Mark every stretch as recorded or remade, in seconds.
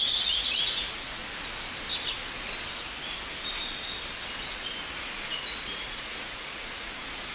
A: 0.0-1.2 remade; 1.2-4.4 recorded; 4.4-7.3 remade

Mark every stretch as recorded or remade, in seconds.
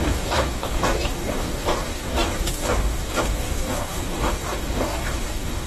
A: 0.0-5.7 remade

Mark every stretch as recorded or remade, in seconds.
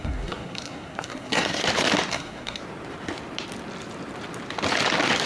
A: 0.0-1.6 remade; 1.6-2.1 recorded; 2.1-2.6 remade; 2.6-5.3 recorded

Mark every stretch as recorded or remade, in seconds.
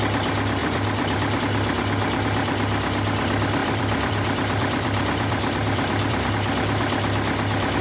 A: 0.0-0.6 recorded; 0.6-1.4 remade; 1.4-3.6 recorded; 3.6-6.3 remade; 6.3-7.8 recorded